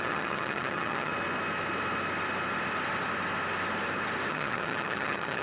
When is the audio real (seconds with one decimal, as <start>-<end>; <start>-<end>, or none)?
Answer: 1.1-4.3